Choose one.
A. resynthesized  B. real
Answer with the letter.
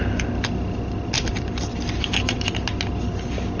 B